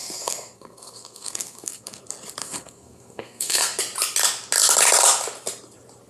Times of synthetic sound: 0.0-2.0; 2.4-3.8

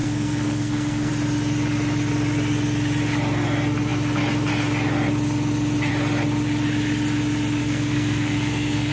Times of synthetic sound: 0.0-1.1; 7.6-8.9

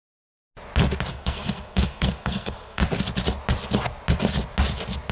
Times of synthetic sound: 0.0-0.4; 1.1-2.8